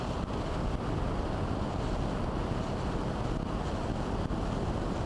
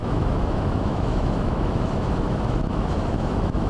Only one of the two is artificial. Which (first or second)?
second